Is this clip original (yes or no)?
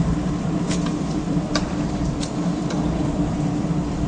no